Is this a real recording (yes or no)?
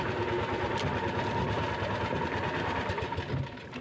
yes